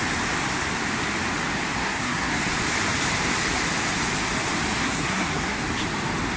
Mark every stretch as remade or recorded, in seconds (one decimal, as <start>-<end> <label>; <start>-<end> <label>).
0.0-1.8 recorded; 1.8-2.4 remade; 2.4-4.8 recorded; 4.8-5.6 remade; 5.6-6.4 recorded